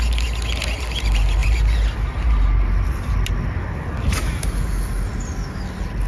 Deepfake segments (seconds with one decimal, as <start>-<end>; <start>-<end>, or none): none